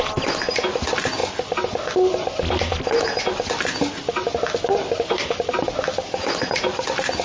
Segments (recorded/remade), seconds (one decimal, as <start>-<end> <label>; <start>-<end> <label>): 0.0-7.2 recorded